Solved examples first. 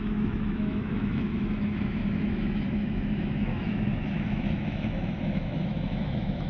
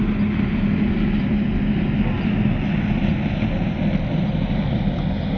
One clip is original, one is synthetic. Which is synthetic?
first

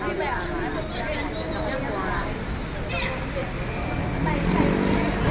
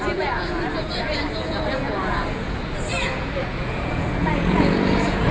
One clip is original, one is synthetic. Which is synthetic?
second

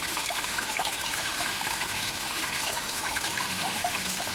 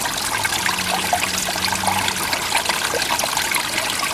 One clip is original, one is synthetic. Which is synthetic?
first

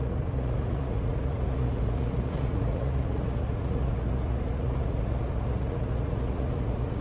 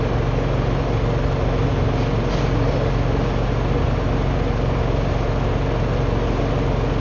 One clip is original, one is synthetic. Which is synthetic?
first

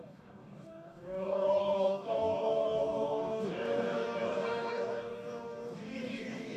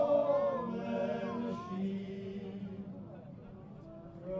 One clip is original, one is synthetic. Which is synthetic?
first